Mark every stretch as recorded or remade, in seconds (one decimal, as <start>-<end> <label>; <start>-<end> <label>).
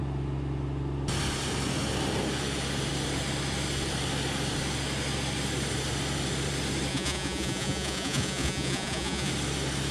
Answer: 0.0-6.9 recorded; 6.9-9.3 remade; 9.3-9.9 recorded